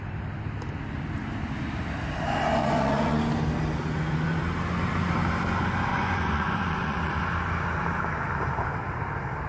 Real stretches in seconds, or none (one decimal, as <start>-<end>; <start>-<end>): 0.0-2.6; 3.2-5.9; 7.2-9.5